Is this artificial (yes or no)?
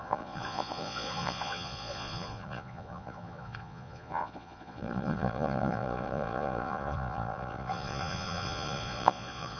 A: yes